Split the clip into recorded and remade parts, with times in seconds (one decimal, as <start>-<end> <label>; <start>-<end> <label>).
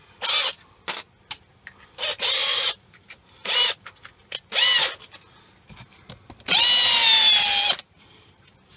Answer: 0.0-2.5 recorded; 2.5-3.2 remade; 3.2-7.0 recorded; 7.0-8.8 remade